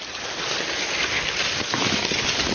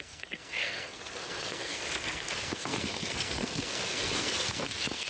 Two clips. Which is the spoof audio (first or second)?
second